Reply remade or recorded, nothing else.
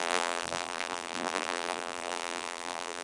remade